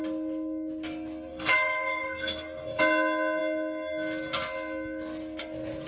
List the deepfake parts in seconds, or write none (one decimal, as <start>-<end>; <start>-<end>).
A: 1.3-2.8